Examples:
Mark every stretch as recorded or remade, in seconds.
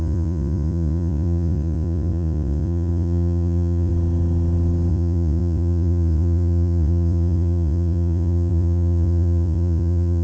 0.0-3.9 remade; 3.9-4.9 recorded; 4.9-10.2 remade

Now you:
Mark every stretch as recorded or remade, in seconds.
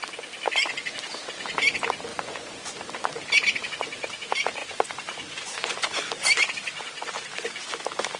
0.0-2.1 recorded; 2.1-2.8 remade; 2.8-4.6 recorded; 4.6-6.1 remade; 6.1-8.2 recorded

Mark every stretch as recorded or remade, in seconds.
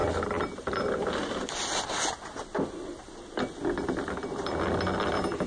0.0-5.5 recorded